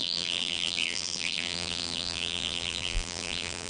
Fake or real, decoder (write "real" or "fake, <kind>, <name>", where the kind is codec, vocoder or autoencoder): fake, vocoder, BigVGAN v2